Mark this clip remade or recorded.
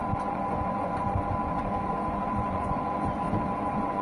remade